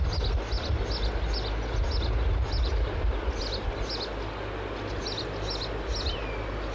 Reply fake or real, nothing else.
real